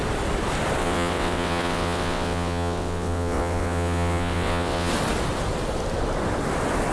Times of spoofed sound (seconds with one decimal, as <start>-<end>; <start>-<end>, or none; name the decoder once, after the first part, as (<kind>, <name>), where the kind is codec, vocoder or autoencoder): 0.8-4.9 (vocoder, WaveNeXt)